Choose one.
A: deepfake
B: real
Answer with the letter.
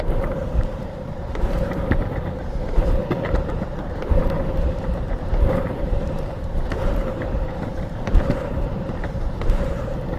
A